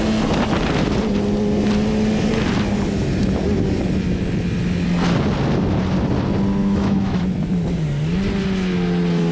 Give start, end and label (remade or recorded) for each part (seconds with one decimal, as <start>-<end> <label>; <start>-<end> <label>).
0.0-6.6 recorded; 6.6-7.2 remade; 7.2-9.3 recorded